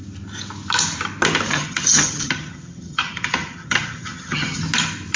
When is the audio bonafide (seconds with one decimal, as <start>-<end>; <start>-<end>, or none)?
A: 0.0-1.5; 4.6-5.2